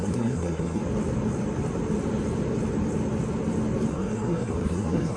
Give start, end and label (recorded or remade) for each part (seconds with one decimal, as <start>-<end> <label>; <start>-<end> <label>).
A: 0.0-0.8 remade; 0.8-3.9 recorded; 3.9-5.2 remade